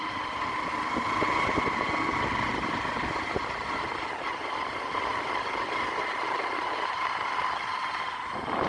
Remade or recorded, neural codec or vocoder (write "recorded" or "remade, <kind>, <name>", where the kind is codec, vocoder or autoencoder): recorded